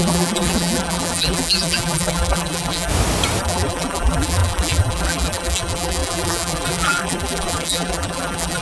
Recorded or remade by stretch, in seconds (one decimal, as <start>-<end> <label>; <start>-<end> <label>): 0.0-2.9 remade; 2.9-3.4 recorded; 3.4-8.6 remade